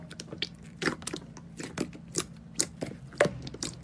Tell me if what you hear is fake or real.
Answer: real